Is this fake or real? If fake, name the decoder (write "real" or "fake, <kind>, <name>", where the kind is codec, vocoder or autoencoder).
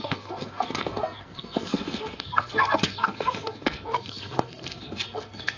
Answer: fake, codec, SNAC